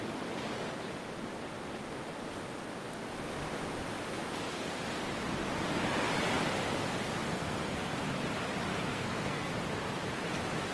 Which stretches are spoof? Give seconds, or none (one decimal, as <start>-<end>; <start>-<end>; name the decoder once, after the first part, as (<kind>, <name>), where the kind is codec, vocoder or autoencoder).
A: 7.3-7.9 (codec, SNAC); 8.9-9.5